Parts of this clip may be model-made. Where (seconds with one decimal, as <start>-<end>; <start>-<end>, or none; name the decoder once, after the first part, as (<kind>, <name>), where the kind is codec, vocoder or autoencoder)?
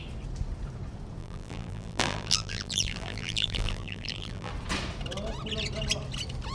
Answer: 1.2-4.5 (vocoder, BigVGAN v2)